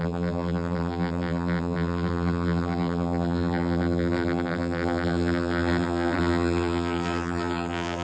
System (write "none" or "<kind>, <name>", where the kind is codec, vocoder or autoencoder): vocoder, BigVGAN v2